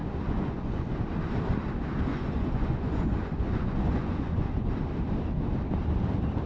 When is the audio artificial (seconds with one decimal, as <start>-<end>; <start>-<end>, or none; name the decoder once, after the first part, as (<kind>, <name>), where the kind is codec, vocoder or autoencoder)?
0.0-0.9 (vocoder, Vocos); 2.1-4.7